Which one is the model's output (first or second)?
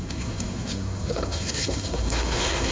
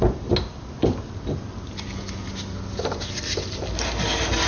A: first